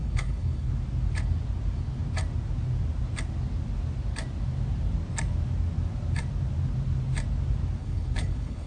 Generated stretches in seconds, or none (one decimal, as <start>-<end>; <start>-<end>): 0.0-0.7; 7.8-8.7